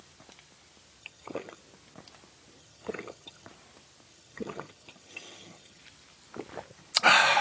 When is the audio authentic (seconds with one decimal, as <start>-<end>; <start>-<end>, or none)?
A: 0.0-1.0; 1.6-2.6; 3.5-4.1; 5.8-7.4